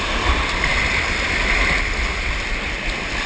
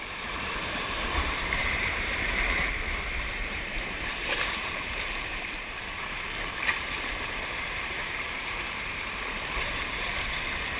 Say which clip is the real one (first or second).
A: first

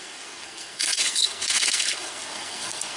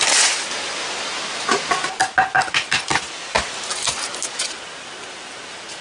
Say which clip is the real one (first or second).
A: second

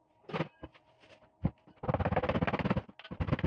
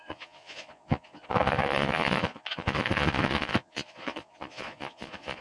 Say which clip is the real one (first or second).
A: first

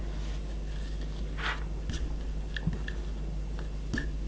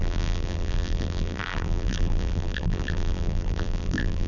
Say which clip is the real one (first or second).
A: first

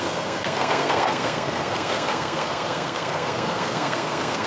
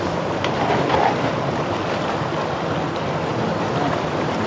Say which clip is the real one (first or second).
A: second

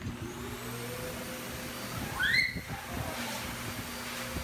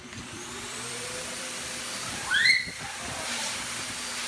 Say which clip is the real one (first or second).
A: first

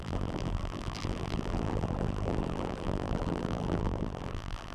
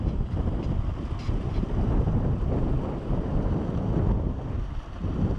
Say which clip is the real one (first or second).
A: second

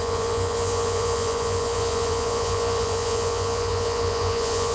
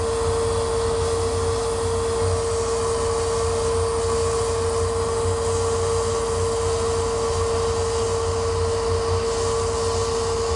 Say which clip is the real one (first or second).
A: second